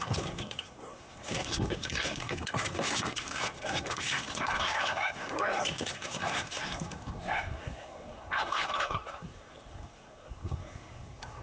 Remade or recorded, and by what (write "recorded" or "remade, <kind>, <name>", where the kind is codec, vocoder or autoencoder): remade, codec, SNAC